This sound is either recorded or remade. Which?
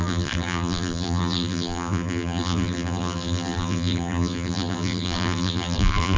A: remade